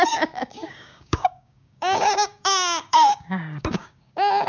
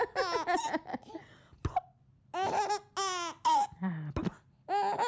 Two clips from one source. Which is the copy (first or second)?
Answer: first